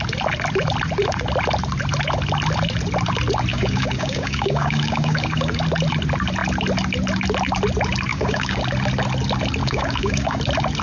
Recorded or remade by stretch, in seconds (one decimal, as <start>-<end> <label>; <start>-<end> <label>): 0.0-3.5 recorded; 3.5-5.6 remade; 5.6-8.1 recorded; 8.1-8.6 remade; 8.6-9.6 recorded; 9.6-10.4 remade; 10.4-10.8 recorded